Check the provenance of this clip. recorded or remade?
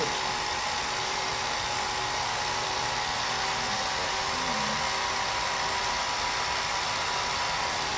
recorded